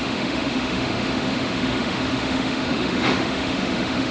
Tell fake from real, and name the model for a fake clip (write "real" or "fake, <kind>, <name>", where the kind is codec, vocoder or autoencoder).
fake, autoencoder, DAC-VAE